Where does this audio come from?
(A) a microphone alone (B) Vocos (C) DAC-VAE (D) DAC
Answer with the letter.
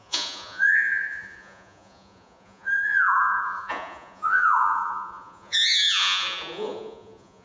B